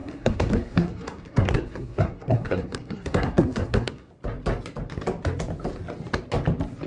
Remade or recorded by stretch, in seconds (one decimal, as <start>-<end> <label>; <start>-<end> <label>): 0.0-4.1 remade; 4.1-6.9 recorded